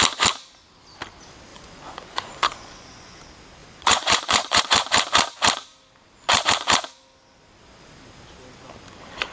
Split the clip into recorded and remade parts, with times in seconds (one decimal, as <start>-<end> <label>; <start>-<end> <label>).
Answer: 0.0-1.5 recorded; 1.5-3.2 remade; 3.2-3.6 recorded; 3.6-4.6 remade; 4.6-9.3 recorded